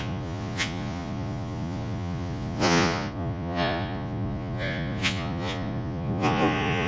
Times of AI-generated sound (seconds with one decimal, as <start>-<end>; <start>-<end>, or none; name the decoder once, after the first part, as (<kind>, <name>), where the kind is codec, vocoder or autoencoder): 0.0-6.9 (vocoder, Vocos)